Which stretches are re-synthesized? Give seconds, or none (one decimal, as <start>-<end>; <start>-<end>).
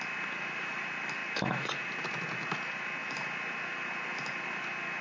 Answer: none